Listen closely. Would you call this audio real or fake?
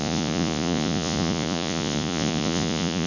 fake